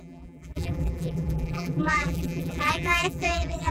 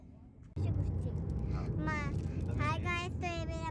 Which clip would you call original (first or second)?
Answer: second